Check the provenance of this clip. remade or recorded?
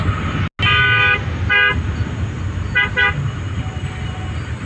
recorded